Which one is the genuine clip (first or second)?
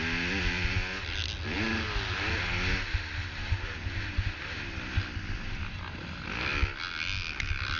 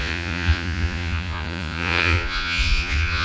first